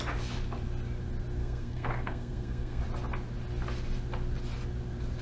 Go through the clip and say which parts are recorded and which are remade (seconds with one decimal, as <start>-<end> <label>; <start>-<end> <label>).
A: 0.0-1.4 recorded; 1.4-2.8 remade; 2.8-5.2 recorded